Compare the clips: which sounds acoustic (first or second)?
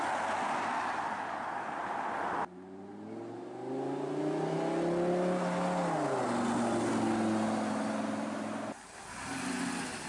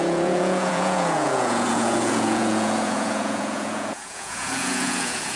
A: first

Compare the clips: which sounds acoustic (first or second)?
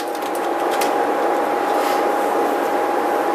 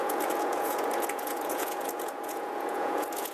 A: first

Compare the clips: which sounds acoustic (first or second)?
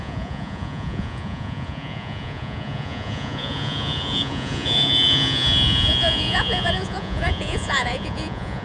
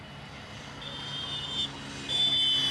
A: second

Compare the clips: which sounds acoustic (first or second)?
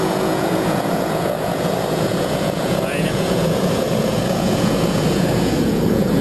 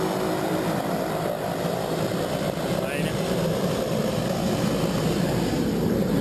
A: second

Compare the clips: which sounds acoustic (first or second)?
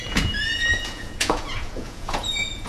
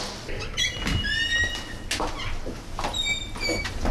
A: second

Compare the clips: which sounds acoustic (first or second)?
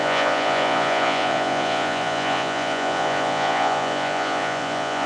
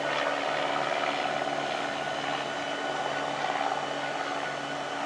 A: second